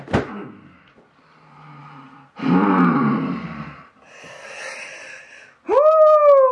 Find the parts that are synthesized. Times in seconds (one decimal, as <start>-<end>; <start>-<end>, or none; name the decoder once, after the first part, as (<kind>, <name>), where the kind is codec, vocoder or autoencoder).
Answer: none